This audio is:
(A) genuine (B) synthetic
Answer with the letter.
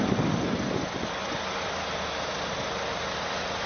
A